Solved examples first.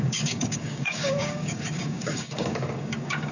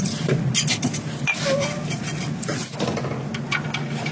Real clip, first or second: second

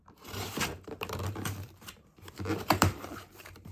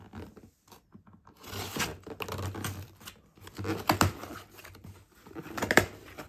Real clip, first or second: second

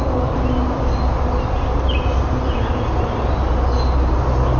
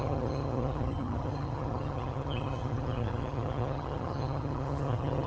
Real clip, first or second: first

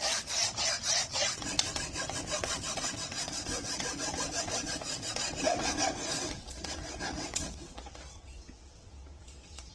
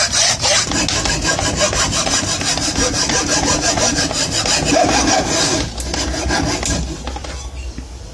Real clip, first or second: second